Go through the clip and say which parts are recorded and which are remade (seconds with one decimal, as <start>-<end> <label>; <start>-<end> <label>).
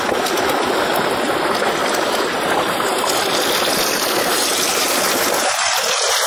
0.0-1.8 recorded; 1.8-5.1 remade; 5.1-6.3 recorded